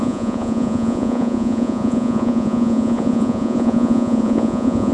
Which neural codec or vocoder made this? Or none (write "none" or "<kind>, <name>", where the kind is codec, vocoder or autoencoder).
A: vocoder, Vocos